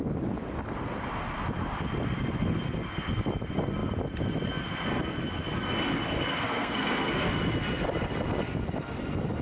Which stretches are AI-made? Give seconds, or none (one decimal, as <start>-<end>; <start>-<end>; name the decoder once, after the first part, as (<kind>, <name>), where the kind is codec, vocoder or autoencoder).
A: 6.3-7.3 (codec, SNAC)